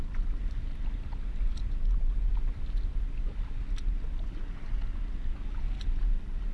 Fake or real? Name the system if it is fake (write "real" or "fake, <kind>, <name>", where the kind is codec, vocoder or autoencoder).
real